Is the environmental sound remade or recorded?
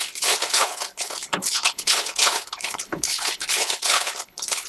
remade